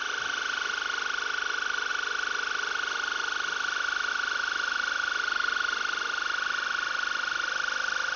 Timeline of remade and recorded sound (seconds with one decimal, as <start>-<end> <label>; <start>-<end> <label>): 0.0-8.2 recorded